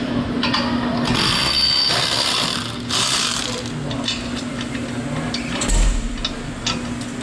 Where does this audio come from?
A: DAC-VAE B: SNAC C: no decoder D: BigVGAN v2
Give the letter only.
C